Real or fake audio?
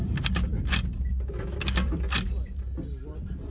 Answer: real